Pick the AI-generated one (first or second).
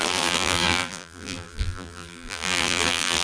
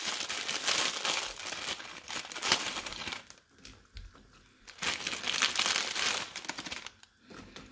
first